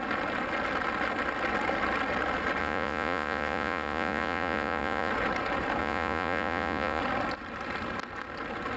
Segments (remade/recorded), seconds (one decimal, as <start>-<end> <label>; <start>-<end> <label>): 0.0-2.6 recorded; 2.6-5.1 remade; 5.1-5.8 recorded; 5.8-7.0 remade; 7.0-8.8 recorded